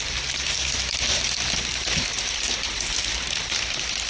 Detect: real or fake fake